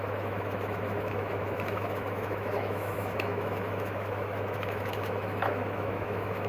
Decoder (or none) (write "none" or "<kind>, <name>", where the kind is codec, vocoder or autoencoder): autoencoder, DAC-VAE